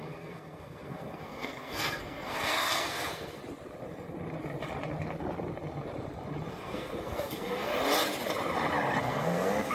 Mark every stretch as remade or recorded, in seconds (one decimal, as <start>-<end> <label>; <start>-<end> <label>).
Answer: 0.0-3.4 remade; 3.4-6.5 recorded; 6.5-7.7 remade; 7.7-9.0 recorded; 9.0-9.7 remade